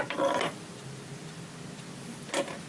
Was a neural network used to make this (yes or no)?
no